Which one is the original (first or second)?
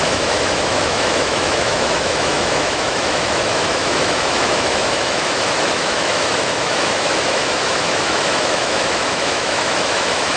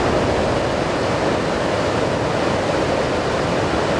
second